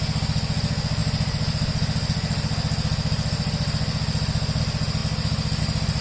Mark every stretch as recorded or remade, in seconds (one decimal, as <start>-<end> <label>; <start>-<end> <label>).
0.0-6.0 recorded